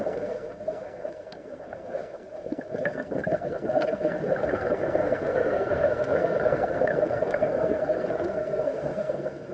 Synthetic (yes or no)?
yes